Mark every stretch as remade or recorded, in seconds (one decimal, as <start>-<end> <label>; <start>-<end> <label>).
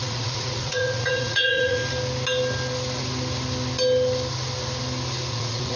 0.0-1.8 remade; 1.8-5.3 recorded; 5.3-5.8 remade